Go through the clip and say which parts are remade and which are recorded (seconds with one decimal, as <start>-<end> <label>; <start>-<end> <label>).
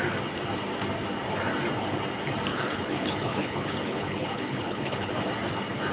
0.0-2.5 recorded; 2.5-5.1 remade; 5.1-5.9 recorded